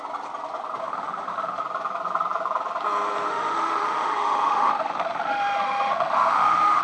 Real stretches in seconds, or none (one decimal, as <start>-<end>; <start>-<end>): 0.0-0.8; 1.6-3.3